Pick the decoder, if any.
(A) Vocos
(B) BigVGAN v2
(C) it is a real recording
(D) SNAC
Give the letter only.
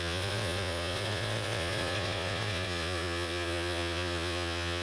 A